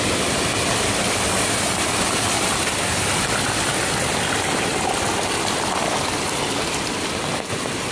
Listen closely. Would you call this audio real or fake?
real